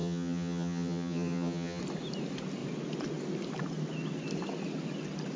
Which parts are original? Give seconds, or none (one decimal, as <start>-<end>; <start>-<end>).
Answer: 1.8-5.4